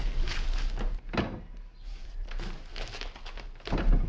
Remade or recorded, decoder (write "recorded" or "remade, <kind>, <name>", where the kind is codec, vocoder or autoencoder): recorded